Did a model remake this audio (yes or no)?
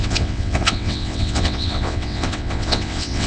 yes